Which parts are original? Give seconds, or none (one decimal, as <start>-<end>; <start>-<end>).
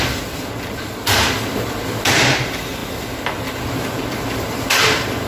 0.0-5.3